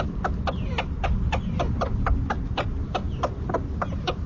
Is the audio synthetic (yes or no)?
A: no